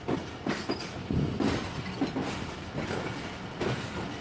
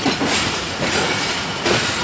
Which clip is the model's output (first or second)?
second